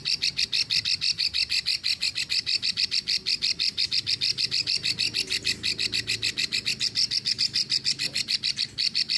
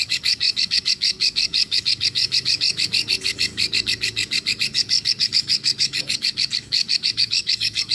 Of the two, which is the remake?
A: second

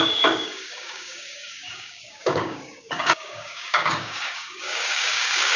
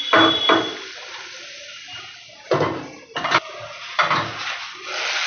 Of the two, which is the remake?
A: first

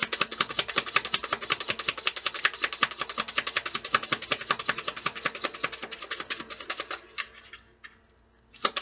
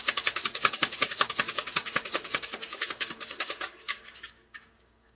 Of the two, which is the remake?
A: second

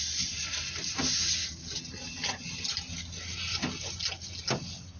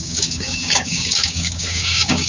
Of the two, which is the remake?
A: second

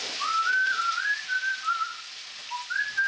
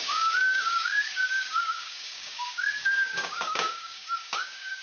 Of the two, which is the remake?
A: second